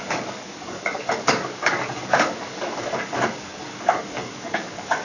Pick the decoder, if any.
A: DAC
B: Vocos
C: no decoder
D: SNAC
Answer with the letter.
A